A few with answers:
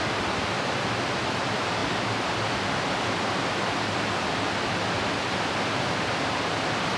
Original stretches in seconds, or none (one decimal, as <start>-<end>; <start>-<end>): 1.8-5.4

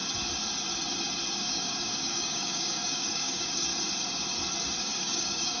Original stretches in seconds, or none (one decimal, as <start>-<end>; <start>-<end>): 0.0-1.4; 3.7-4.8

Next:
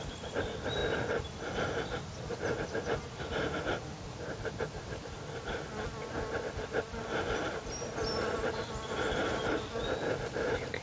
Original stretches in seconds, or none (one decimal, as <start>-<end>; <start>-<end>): 0.0-10.8

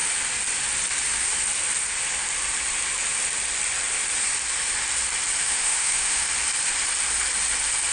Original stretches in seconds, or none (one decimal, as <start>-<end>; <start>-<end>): 0.0-5.4; 6.2-7.9

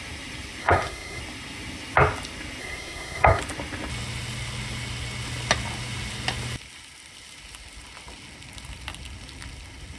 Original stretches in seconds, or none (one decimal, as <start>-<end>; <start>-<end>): 0.0-0.6; 1.2-2.6; 3.4-10.0

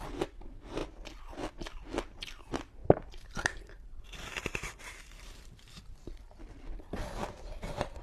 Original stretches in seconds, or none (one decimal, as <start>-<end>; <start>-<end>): 0.0-2.8; 5.8-7.2

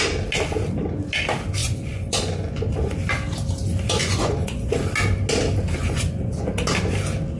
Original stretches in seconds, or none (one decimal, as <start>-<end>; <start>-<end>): 0.0-1.6; 3.0-4.0; 4.8-5.8; 6.5-7.4

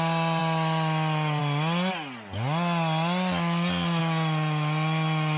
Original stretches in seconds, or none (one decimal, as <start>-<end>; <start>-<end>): 0.0-5.4